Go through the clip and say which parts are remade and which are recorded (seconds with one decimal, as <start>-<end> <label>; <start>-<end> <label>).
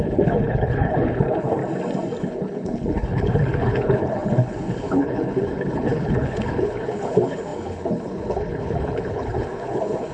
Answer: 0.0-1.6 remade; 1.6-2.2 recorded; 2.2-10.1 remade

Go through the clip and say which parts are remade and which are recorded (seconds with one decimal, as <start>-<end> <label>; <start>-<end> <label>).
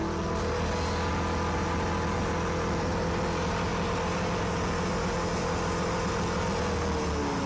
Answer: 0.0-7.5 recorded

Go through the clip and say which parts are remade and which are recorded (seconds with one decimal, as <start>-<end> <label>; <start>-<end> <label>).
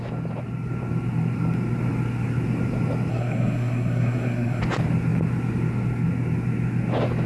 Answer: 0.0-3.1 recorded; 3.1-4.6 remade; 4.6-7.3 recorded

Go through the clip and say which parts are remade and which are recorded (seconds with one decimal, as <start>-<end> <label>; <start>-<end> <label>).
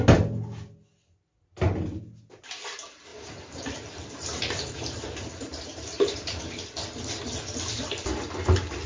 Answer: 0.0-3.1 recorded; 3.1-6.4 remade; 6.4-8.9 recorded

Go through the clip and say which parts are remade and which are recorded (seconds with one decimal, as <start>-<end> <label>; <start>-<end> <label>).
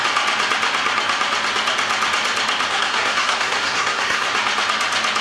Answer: 0.0-2.7 recorded; 2.7-4.3 remade; 4.3-5.2 recorded